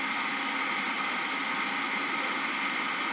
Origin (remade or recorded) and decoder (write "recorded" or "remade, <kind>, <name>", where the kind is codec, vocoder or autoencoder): remade, vocoder, BigVGAN v2